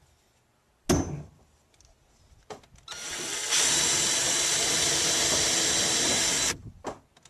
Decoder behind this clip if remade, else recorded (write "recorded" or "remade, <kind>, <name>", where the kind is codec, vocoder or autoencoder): recorded